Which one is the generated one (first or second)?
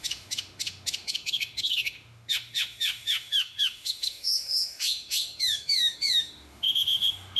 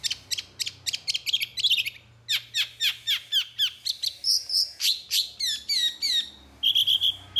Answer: first